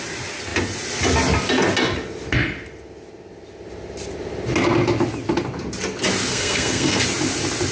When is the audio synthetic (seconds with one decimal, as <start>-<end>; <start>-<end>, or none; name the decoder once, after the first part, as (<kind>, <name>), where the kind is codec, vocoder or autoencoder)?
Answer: 6.3-7.0 (codec, SNAC)